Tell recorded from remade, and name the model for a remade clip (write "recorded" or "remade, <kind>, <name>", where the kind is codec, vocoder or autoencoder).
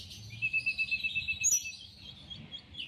recorded